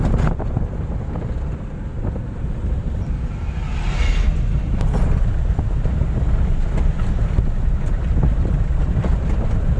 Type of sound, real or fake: real